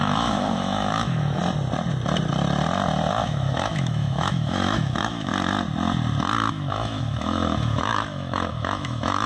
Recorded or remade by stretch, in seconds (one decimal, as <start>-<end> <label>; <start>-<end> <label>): 0.0-1.4 remade; 1.4-3.1 recorded; 3.1-5.3 remade; 5.3-6.5 recorded; 6.5-9.3 remade